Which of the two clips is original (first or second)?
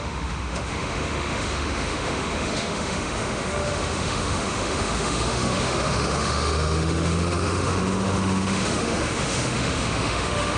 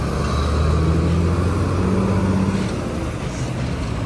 second